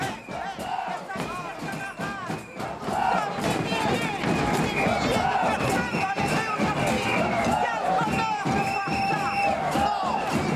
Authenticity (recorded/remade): recorded